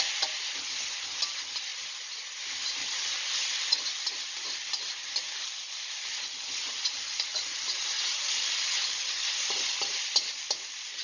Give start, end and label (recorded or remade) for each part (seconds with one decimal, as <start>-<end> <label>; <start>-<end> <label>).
0.0-11.0 recorded